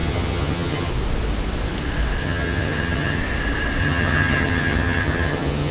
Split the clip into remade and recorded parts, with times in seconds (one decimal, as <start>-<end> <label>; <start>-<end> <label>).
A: 0.0-0.9 remade; 0.9-2.2 recorded; 2.2-3.2 remade; 3.2-3.8 recorded; 3.8-5.7 remade